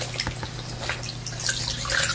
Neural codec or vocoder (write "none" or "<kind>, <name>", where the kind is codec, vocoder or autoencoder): none